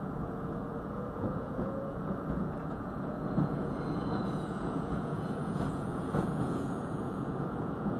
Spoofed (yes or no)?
yes